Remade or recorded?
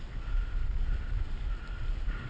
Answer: recorded